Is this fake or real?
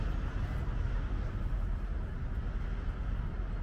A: real